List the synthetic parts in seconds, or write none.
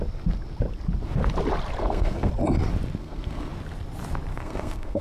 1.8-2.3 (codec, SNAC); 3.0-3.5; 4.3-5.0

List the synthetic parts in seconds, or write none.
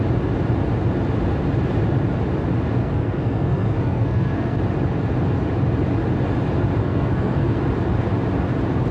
2.8-4.6 (codec, SNAC); 6.8-7.6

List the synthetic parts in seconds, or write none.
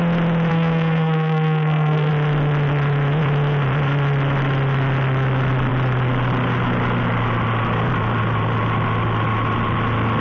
0.5-2.1 (codec, SNAC)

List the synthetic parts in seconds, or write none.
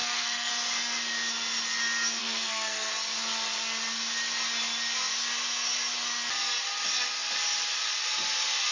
0.0-0.5 (codec, SNAC); 2.2-2.9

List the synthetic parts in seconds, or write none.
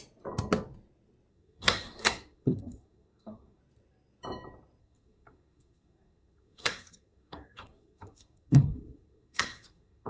1.3-3.6 (codec, SNAC); 4.8-10.1